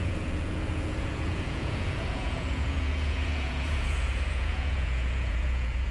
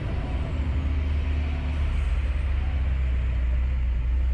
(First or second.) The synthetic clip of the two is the first